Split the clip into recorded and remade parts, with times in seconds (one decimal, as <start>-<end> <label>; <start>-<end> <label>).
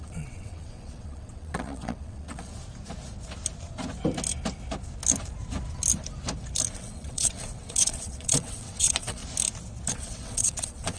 0.0-2.5 remade; 2.5-6.7 recorded; 6.7-9.2 remade; 9.2-9.9 recorded; 9.9-11.0 remade